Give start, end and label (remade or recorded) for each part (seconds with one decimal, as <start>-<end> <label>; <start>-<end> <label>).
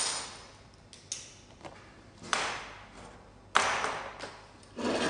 0.0-5.1 recorded